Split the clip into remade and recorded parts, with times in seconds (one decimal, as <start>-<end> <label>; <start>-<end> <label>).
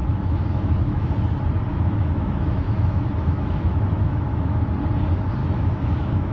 0.0-1.1 remade; 1.1-1.7 recorded; 1.7-4.7 remade; 4.7-5.4 recorded; 5.4-6.3 remade